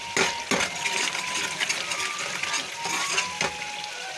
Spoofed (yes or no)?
no